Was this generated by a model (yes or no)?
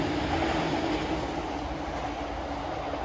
no